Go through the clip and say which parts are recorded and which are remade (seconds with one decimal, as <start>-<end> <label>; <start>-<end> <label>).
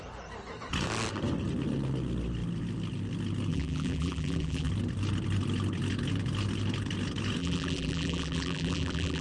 0.0-3.5 recorded; 3.5-4.7 remade; 4.7-7.4 recorded; 7.4-9.2 remade